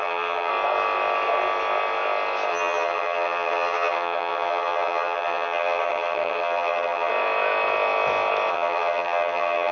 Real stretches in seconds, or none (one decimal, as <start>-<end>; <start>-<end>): 0.5-2.5; 7.1-8.5